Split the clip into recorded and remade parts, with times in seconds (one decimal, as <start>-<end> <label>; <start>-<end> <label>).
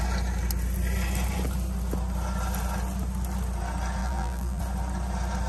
0.0-4.0 recorded; 4.0-4.6 remade; 4.6-5.5 recorded